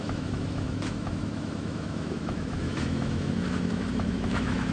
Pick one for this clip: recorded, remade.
remade